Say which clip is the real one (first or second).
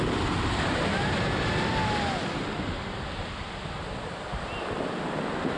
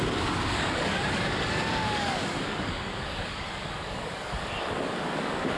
first